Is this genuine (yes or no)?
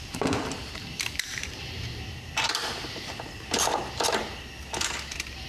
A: no